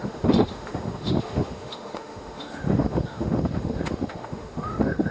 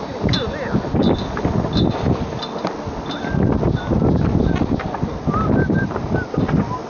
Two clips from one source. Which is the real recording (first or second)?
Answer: second